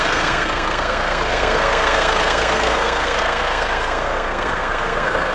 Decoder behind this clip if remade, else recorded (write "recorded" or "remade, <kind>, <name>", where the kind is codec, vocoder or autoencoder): remade, codec, SNAC